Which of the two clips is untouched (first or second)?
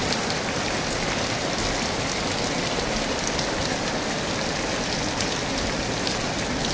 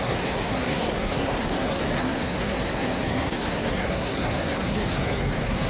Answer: first